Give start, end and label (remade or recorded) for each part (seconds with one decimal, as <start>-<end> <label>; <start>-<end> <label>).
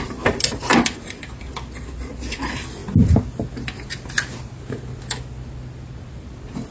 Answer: 0.0-6.7 recorded